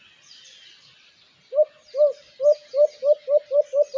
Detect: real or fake real